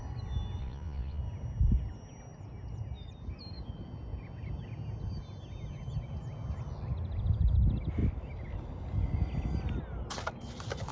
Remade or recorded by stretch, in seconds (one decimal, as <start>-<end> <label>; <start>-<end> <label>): 0.0-0.6 recorded; 0.6-1.2 remade; 1.2-10.9 recorded